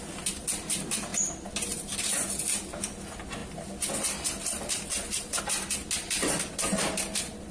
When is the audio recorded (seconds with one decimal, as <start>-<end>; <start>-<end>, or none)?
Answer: 0.0-7.5